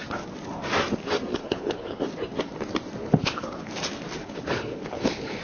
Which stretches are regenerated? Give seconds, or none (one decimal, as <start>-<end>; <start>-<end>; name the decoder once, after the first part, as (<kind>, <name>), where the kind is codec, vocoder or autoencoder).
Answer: 1.3-2.0 (codec, HILCodec); 3.0-3.7; 4.2-5.4